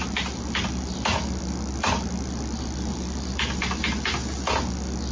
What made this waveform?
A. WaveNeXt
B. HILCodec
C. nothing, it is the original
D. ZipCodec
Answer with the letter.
C